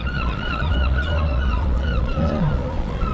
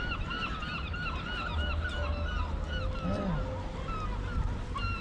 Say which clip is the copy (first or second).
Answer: first